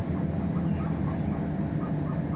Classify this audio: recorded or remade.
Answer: recorded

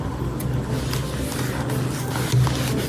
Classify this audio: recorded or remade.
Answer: recorded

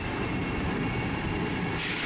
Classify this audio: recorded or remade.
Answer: recorded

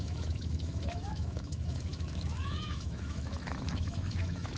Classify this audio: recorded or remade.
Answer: remade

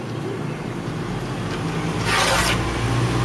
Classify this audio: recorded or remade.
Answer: recorded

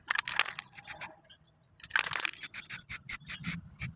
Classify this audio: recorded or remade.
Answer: recorded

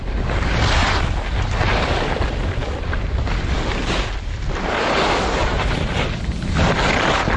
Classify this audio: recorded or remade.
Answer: recorded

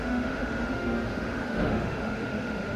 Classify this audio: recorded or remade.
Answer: remade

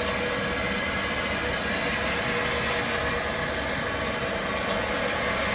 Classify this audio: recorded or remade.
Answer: recorded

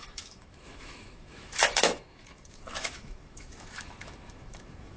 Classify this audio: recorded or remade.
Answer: remade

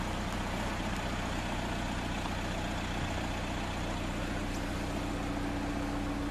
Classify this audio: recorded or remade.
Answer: recorded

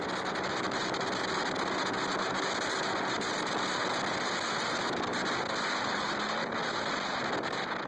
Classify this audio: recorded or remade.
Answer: recorded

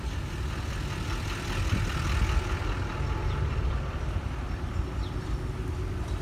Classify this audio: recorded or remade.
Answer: recorded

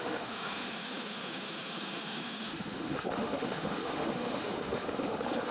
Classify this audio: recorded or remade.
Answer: remade